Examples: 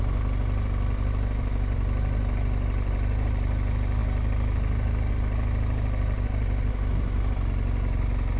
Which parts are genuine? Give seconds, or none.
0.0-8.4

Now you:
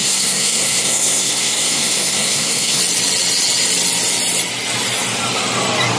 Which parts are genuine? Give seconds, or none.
2.8-6.0